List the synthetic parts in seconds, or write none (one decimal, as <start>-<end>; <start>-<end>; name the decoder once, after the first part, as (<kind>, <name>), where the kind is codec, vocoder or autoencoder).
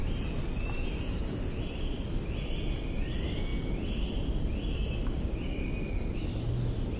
none